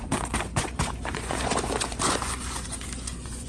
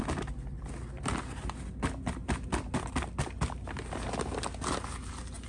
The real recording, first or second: second